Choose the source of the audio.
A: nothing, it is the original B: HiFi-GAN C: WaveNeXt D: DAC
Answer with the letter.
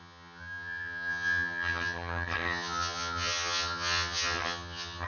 B